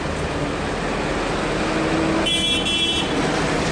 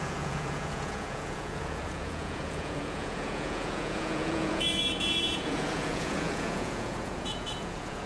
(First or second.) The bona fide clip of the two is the first